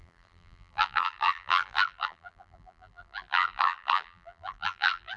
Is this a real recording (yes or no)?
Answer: no